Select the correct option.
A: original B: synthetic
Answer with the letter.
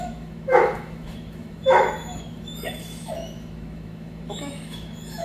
B